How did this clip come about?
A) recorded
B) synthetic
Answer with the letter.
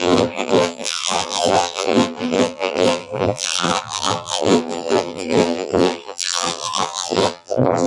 B